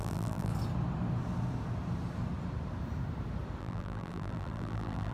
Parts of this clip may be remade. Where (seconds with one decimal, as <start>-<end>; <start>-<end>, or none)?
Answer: 0.0-0.5; 3.6-5.1